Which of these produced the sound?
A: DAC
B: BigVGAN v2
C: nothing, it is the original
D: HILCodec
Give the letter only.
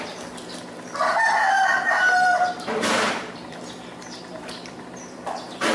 B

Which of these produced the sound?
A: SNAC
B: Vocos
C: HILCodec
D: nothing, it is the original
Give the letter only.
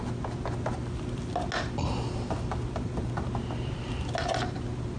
D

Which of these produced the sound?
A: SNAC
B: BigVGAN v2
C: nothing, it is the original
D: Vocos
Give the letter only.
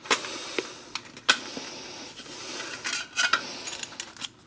C